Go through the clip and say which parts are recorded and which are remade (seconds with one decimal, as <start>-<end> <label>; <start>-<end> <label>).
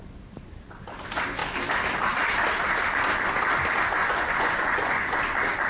0.0-4.0 recorded; 4.0-5.2 remade; 5.2-5.7 recorded